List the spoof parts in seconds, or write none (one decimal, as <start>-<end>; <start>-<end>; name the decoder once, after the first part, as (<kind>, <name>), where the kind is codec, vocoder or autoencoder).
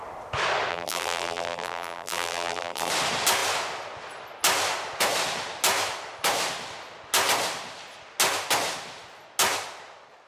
0.7-2.9 (vocoder, BigVGAN v2)